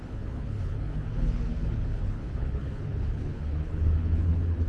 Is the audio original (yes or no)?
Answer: no